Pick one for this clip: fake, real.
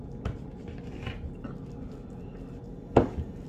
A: real